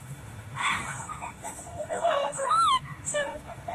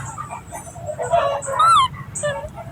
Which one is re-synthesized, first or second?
first